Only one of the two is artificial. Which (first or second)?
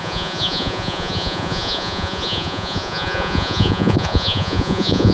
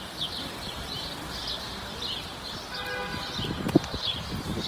first